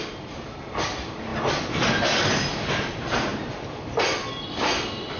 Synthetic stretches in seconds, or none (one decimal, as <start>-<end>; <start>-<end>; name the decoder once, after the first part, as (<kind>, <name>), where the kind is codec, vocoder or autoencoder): none